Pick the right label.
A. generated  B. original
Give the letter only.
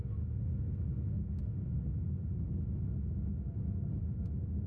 B